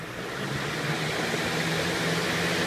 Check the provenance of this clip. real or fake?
real